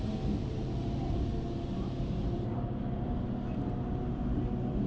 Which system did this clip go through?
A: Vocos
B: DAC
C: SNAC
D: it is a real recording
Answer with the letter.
D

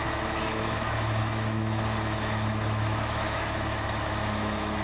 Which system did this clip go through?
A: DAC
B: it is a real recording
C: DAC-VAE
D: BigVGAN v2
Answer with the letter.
C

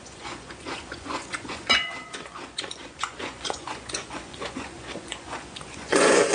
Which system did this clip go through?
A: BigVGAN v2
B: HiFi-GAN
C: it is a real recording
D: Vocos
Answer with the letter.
D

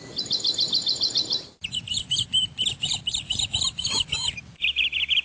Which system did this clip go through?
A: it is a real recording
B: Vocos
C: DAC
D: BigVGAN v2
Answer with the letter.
D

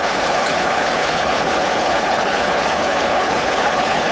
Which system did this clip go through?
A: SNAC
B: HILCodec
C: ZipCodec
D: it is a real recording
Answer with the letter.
B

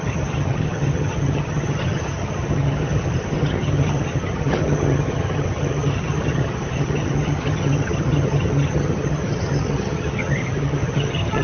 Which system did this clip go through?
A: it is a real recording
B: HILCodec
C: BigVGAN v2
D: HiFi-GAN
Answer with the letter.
D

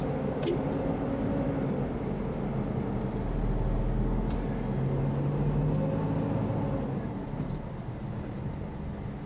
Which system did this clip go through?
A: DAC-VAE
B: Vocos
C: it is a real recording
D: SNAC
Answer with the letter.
C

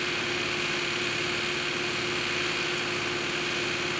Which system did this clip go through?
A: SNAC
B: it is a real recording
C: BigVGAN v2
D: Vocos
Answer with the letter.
B